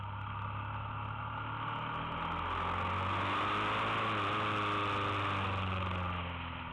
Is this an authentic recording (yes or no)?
yes